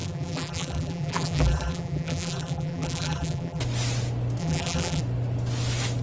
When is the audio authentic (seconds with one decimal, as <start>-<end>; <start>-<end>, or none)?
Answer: 3.6-4.4; 5.0-6.0